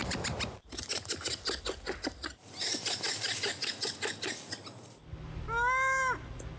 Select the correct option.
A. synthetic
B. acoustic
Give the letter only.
B